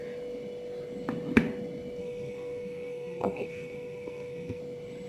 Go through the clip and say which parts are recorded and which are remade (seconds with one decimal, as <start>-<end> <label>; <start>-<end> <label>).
0.0-2.0 recorded; 2.0-4.6 remade; 4.6-5.1 recorded